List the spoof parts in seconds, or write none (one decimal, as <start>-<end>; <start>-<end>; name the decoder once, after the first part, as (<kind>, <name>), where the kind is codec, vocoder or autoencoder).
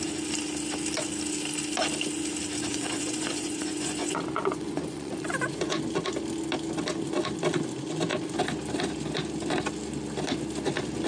2.7-5.8 (vocoder, Vocos)